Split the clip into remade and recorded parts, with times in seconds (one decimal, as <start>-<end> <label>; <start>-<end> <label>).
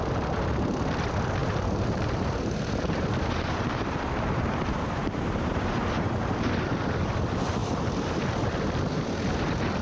0.0-1.4 recorded; 1.4-6.7 remade; 6.7-9.8 recorded